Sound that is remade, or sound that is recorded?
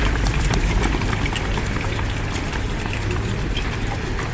remade